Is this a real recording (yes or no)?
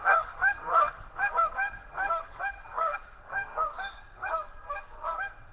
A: no